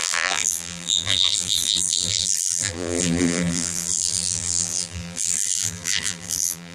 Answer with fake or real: fake